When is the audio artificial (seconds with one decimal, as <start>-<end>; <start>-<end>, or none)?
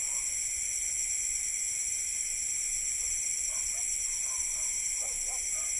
none